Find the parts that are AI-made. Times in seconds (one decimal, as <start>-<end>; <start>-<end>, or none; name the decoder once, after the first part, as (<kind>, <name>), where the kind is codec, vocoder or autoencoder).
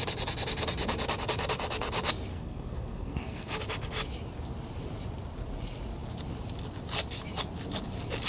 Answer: 2.3-3.6 (codec, SNAC)